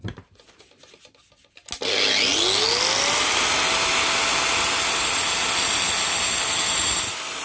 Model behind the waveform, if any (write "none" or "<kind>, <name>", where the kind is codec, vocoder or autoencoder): none